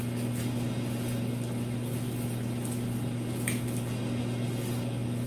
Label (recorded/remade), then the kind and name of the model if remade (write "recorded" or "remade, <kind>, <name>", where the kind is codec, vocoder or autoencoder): recorded